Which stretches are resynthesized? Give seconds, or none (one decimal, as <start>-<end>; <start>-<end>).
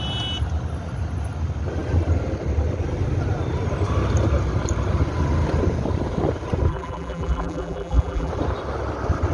6.7-8.3